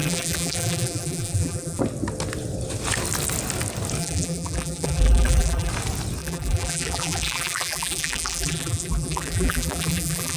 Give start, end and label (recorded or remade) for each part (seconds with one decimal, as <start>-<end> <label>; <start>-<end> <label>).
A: 0.0-1.8 remade; 1.8-4.0 recorded; 4.0-5.7 remade; 5.7-6.2 recorded; 6.2-10.4 remade